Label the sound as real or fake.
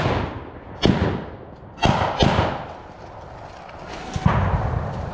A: real